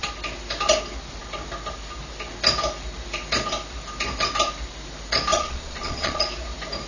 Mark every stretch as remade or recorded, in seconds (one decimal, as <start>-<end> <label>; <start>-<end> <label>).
0.0-5.3 recorded; 5.3-6.2 remade; 6.2-6.9 recorded